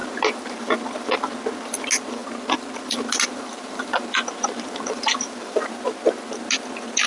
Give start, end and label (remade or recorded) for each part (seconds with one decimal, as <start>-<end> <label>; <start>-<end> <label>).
0.0-0.6 remade; 0.6-2.2 recorded; 2.2-5.7 remade; 5.7-7.1 recorded